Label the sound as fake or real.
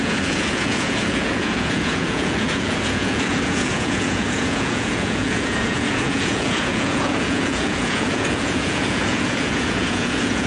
fake